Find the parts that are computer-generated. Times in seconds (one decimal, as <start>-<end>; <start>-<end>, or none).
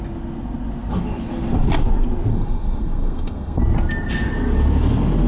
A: 2.3-3.6